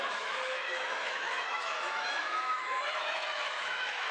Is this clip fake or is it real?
fake